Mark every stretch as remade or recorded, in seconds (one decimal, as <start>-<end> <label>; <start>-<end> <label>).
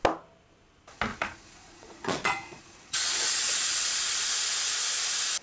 0.0-1.1 recorded; 1.1-4.3 remade; 4.3-5.4 recorded